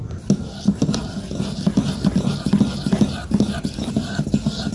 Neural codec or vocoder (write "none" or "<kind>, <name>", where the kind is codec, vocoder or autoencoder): none